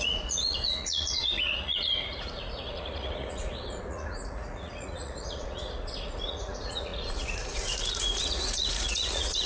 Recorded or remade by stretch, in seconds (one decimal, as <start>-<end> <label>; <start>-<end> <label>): 0.0-9.5 remade